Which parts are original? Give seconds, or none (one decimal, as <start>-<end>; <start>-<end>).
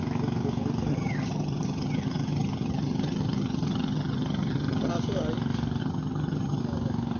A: 0.0-0.9; 4.9-5.8; 6.6-7.2